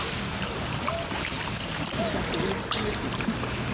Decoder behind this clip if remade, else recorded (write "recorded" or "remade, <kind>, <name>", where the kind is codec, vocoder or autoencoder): recorded